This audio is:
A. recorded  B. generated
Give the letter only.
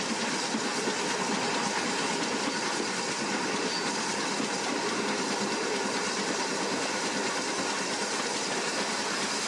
A